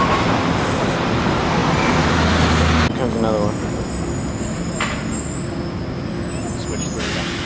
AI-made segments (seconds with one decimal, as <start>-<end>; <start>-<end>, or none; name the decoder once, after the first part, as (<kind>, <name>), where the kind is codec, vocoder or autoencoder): none